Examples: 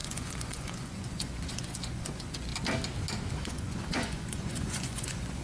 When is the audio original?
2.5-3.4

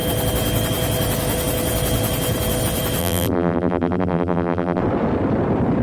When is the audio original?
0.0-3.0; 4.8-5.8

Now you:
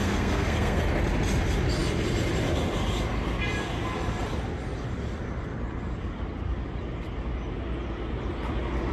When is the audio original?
0.8-8.9

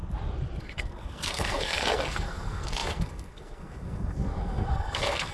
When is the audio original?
0.0-0.6

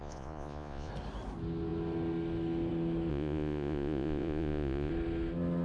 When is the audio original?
0.9-3.1; 4.9-5.6

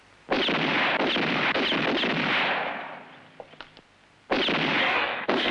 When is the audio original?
0.0-4.8